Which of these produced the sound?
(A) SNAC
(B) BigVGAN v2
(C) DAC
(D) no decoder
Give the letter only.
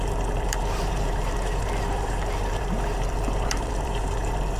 B